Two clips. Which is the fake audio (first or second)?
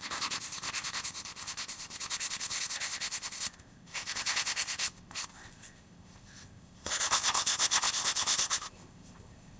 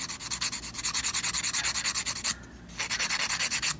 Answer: first